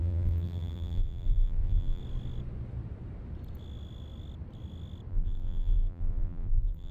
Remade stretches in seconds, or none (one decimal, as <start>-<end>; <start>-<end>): 0.0-2.0; 5.1-6.9